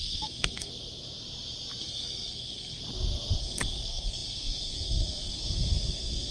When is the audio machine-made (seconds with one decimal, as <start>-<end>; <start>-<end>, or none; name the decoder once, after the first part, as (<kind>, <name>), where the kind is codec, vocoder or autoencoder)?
0.0-0.7 (codec, SNAC); 1.8-2.8; 3.4-6.3